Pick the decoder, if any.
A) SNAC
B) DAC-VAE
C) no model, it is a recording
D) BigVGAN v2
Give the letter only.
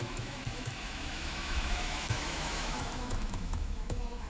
B